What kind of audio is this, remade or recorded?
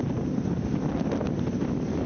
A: recorded